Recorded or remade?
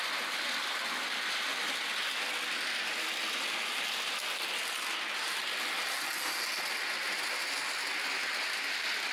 recorded